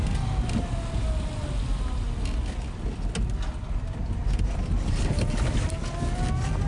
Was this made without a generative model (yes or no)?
yes